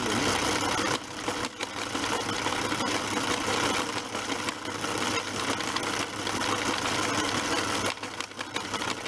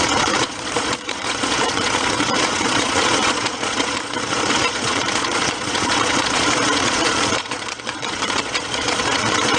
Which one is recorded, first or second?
first